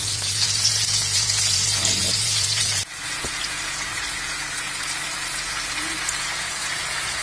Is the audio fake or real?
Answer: fake